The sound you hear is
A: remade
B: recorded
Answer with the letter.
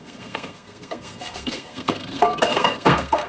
A